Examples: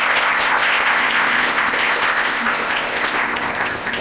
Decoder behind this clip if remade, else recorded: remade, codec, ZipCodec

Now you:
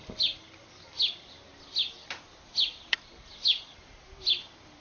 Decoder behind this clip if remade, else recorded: recorded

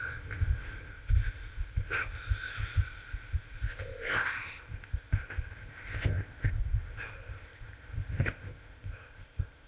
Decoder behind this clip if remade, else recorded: remade, codec, ZipCodec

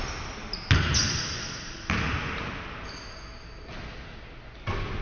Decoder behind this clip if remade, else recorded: recorded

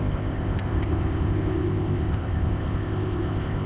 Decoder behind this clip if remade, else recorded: remade, codec, ZipCodec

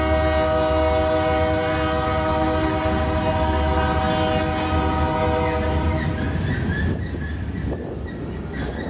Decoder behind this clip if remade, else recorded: recorded